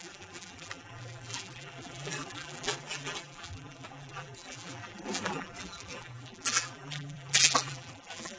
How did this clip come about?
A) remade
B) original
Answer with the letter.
A